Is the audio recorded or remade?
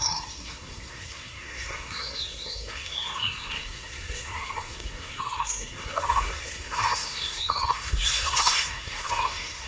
remade